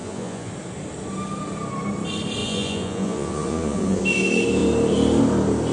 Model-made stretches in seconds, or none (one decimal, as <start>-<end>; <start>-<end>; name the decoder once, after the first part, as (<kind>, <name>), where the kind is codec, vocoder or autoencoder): 0.0-0.5 (vocoder, Vocos); 2.4-4.0